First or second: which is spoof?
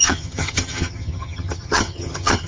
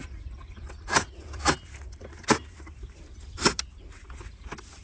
first